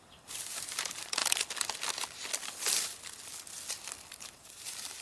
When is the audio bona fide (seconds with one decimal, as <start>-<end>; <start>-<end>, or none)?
1.2-4.2